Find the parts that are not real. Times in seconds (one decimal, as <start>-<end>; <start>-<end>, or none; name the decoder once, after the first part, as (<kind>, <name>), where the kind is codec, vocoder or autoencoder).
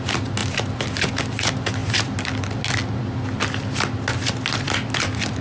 none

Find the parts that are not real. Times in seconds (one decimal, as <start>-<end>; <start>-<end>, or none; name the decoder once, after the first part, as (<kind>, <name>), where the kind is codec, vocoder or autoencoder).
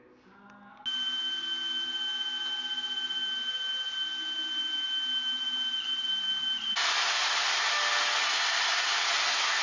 none